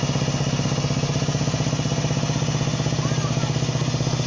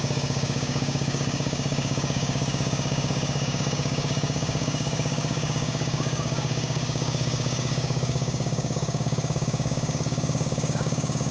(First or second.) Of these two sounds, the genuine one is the first